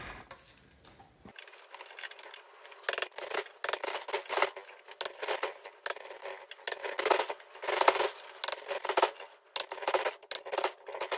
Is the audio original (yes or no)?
yes